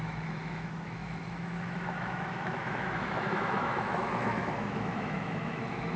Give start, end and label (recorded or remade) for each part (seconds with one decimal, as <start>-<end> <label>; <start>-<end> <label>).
0.0-6.0 remade